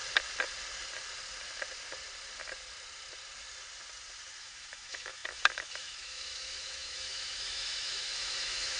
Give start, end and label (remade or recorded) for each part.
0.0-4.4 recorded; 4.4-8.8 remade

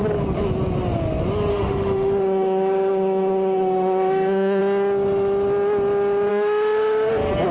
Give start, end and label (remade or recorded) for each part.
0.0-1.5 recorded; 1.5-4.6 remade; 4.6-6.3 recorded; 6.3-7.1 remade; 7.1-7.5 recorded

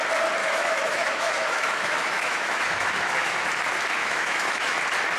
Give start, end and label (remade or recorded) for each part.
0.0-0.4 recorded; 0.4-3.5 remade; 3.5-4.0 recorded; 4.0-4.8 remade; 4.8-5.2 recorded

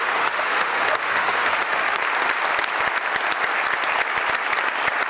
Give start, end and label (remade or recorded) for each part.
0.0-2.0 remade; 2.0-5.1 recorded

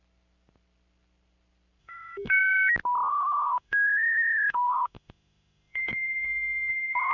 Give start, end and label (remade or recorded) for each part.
0.0-1.8 recorded; 1.8-2.7 remade; 2.7-3.1 recorded; 3.1-7.1 remade

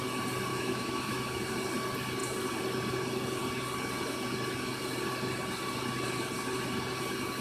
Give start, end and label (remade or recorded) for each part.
0.0-0.5 recorded; 0.5-1.4 remade; 1.4-7.4 recorded

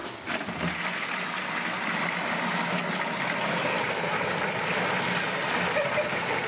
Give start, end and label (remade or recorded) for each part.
0.0-6.5 recorded